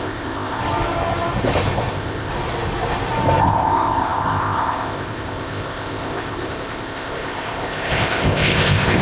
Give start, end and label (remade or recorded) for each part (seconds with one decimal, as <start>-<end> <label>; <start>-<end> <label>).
0.0-0.6 remade; 0.6-1.9 recorded; 1.9-2.3 remade; 2.3-3.4 recorded; 3.4-9.0 remade